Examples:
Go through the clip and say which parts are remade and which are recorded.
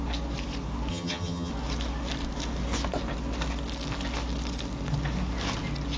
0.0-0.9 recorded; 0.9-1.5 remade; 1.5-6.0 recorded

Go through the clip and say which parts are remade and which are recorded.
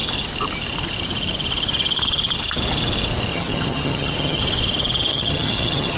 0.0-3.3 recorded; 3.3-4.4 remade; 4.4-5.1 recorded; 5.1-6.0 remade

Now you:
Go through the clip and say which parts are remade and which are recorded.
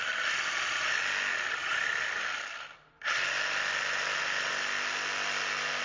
0.0-5.8 recorded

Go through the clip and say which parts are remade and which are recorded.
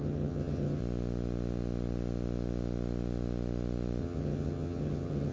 0.0-0.8 remade; 0.8-4.0 recorded; 4.0-5.3 remade